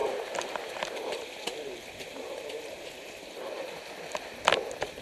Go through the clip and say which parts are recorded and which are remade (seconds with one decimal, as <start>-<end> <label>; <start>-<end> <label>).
0.0-3.0 remade; 3.0-5.0 recorded